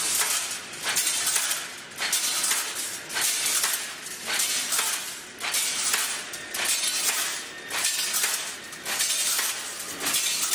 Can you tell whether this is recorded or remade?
recorded